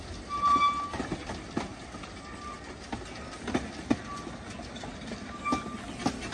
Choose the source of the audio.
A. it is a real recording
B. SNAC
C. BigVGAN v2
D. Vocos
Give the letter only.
A